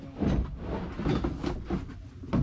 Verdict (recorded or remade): recorded